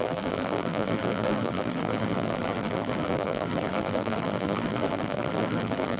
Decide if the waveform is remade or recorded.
remade